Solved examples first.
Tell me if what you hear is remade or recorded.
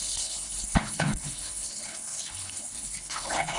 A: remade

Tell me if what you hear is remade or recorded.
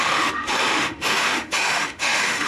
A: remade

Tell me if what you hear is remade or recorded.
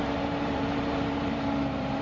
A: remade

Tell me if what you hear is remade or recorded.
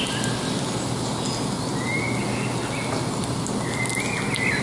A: recorded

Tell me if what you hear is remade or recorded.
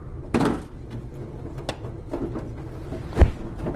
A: recorded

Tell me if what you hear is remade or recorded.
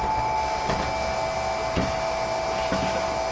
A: recorded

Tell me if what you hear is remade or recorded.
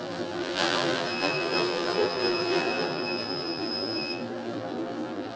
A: remade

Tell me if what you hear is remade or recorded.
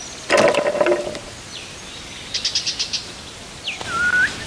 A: recorded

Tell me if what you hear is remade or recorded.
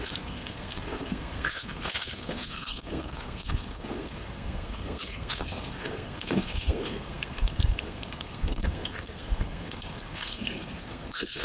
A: remade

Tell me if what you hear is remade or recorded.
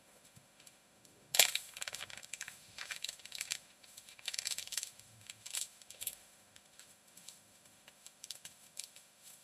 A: remade